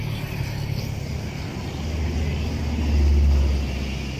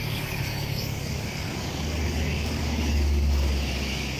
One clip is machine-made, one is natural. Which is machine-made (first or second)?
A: second